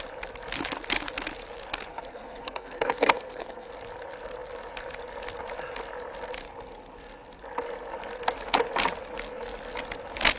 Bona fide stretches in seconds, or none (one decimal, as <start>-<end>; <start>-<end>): 0.0-1.9; 3.7-10.4